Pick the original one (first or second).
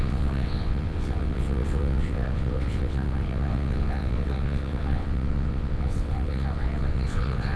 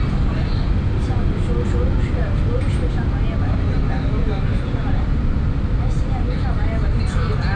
second